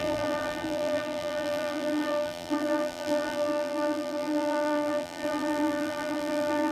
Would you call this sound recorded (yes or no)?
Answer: no